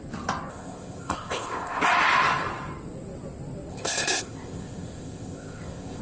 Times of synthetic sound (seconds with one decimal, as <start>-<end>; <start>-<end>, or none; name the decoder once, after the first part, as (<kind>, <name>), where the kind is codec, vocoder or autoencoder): 0.5-1.8 (codec, ZipCodec); 3.7-6.0